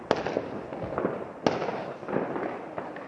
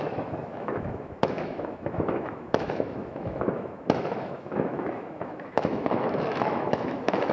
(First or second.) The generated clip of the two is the second